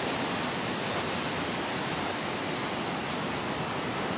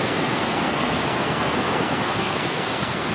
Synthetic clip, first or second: second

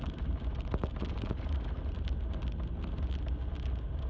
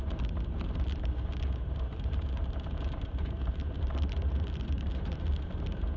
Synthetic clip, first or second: second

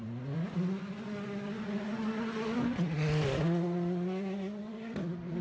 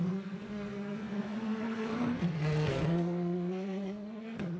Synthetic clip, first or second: second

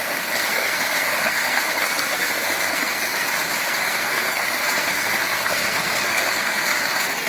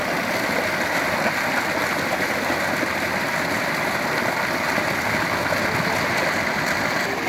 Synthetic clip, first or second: first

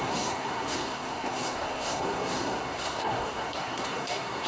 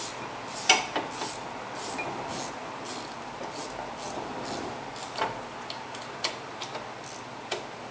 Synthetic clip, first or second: first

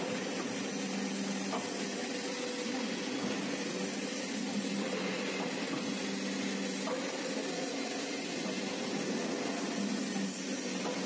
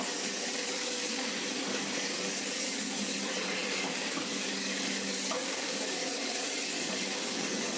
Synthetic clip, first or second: second